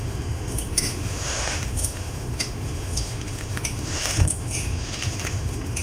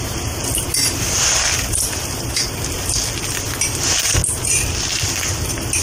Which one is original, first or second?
second